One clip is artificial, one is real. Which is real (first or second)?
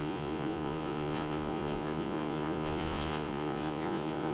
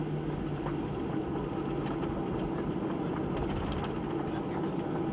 second